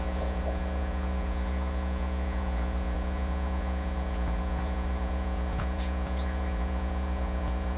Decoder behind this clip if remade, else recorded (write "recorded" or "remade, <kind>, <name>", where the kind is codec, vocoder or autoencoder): remade, vocoder, Vocos